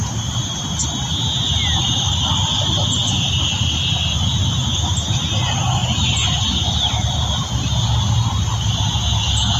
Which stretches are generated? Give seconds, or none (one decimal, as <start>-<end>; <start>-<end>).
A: none